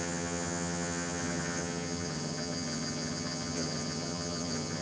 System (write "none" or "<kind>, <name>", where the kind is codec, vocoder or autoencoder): vocoder, HiFi-GAN